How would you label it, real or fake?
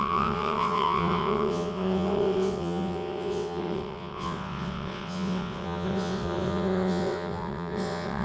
fake